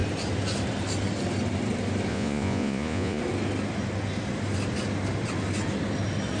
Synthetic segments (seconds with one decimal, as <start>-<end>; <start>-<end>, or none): 2.1-3.2